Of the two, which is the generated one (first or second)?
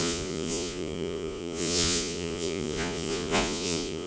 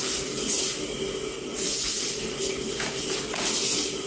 first